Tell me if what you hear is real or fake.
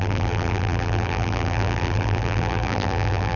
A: fake